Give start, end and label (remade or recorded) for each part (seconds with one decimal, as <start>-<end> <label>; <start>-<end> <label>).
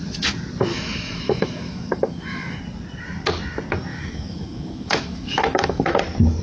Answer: 0.0-0.7 recorded; 0.7-2.6 remade; 2.6-3.9 recorded; 3.9-6.0 remade; 6.0-6.4 recorded